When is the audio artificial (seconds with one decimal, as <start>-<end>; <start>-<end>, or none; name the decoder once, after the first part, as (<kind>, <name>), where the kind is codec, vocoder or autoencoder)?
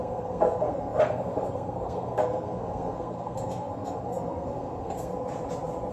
0.0-5.1 (codec, SNAC)